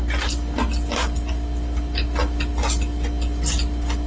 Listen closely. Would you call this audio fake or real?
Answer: real